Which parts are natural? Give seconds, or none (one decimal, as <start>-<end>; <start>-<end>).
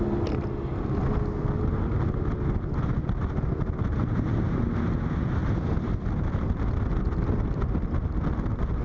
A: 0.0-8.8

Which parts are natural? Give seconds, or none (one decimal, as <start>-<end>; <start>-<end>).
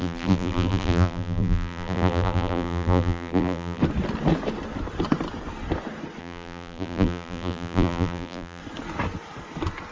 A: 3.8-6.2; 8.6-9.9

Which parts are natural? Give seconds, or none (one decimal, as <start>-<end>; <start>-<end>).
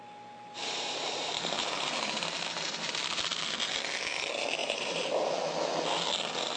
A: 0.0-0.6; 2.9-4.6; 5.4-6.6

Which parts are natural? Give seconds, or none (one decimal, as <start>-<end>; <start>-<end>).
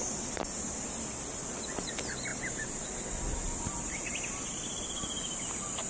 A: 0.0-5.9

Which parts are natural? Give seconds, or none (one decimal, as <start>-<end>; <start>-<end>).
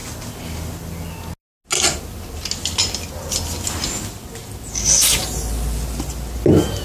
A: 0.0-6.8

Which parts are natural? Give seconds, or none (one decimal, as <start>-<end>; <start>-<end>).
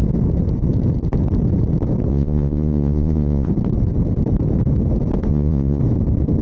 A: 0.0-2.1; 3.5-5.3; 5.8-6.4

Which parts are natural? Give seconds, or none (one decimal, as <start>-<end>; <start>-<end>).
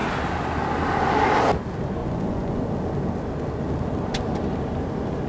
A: 0.0-2.0; 2.6-5.3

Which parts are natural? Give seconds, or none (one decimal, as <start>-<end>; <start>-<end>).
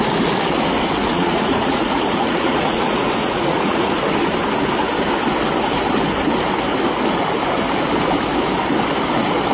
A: 0.0-1.0; 4.0-9.5